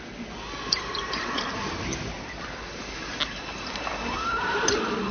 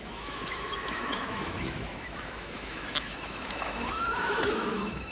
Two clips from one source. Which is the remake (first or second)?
second